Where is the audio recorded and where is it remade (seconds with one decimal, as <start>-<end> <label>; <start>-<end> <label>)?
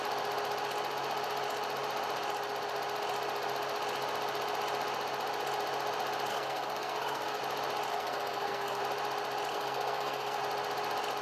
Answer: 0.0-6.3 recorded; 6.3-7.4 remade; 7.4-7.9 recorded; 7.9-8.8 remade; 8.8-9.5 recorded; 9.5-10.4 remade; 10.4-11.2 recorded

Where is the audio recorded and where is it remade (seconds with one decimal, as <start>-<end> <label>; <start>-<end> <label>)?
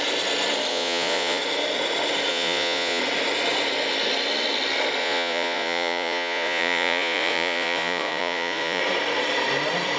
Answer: 0.0-0.7 recorded; 0.7-1.4 remade; 1.4-2.3 recorded; 2.3-3.0 remade; 3.0-5.0 recorded; 5.0-8.8 remade; 8.8-10.0 recorded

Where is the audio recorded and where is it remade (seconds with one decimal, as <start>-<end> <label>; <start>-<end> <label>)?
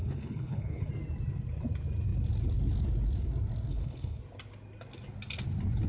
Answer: 0.0-0.9 remade; 0.9-3.7 recorded; 3.7-4.2 remade; 4.2-5.9 recorded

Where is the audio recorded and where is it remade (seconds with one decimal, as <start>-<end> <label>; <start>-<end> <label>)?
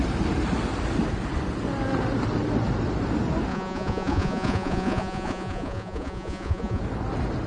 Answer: 0.0-3.5 recorded; 3.5-6.8 remade; 6.8-7.5 recorded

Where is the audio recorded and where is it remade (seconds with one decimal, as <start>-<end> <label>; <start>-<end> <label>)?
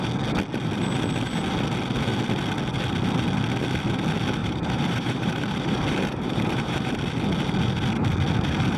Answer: 0.0-4.4 recorded; 4.4-6.9 remade; 6.9-8.8 recorded